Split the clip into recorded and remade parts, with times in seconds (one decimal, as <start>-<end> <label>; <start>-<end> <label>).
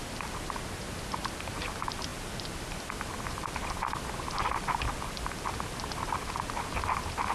0.0-7.3 recorded